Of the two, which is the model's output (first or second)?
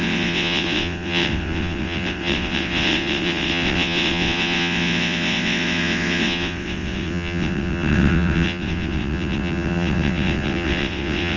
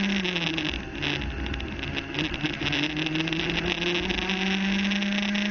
first